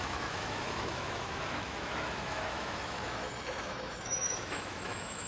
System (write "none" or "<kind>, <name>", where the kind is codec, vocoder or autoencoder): autoencoder, DAC-VAE